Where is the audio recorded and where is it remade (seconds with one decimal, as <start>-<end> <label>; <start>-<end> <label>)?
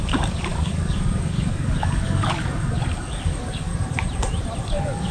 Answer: 0.0-3.7 remade; 3.7-4.6 recorded; 4.6-5.1 remade